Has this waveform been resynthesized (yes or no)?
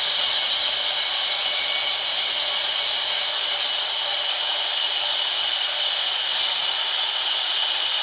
no